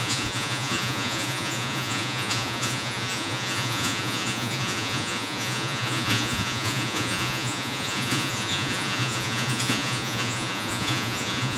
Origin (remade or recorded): remade